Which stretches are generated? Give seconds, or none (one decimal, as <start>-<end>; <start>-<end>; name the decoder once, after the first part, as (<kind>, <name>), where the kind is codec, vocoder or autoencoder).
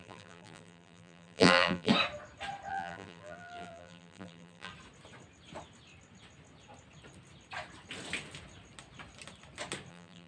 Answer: 0.0-1.9 (vocoder, BigVGAN v2); 2.7-4.7; 9.9-10.3